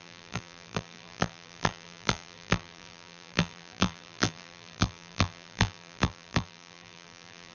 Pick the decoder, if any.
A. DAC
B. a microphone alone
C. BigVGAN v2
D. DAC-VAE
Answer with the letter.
C